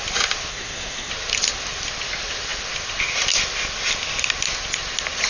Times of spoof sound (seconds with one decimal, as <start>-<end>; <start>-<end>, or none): 0.5-1.1

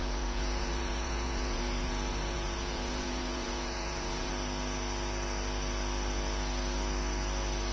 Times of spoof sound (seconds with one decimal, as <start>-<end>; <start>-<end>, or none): 0.0-4.3

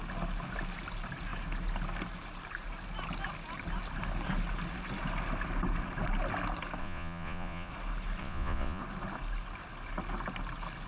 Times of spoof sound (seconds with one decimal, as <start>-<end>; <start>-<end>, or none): 6.8-7.7; 8.2-8.8